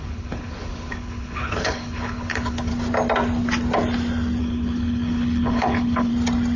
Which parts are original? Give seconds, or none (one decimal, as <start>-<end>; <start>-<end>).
2.7-4.4; 6.1-6.6